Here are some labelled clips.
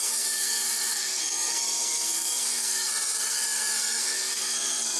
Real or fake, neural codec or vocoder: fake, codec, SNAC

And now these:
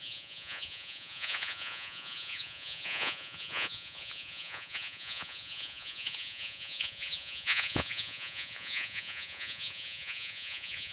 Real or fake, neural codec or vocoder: fake, vocoder, Vocos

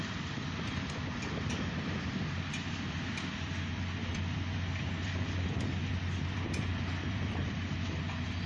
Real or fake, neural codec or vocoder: fake, vocoder, BigVGAN v2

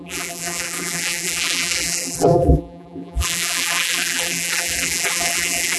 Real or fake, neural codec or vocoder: fake, vocoder, BigVGAN v2